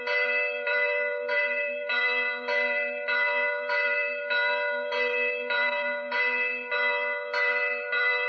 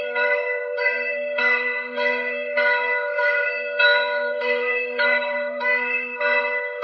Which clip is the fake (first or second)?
second